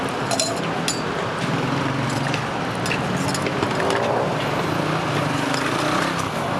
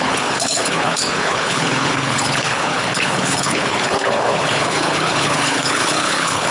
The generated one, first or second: second